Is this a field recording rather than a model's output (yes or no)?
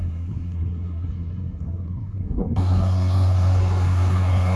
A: no